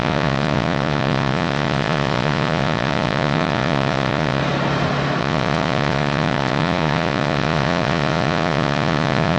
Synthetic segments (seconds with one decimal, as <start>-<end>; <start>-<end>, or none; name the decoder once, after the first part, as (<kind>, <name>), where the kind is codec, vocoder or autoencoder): 0.0-4.4 (vocoder, Vocos); 5.2-9.4